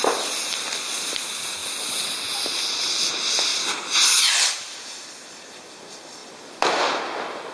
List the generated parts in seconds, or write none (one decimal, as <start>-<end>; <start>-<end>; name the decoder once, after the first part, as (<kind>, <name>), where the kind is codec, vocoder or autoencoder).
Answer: none